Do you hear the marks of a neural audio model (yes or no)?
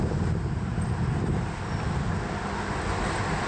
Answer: no